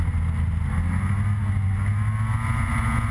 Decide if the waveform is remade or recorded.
recorded